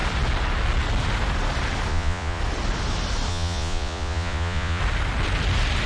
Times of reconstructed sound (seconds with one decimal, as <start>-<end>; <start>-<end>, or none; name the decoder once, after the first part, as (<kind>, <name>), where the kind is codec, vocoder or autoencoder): 1.9-2.4 (vocoder, Vocos); 3.3-4.8